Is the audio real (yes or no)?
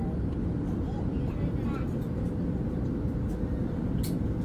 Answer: yes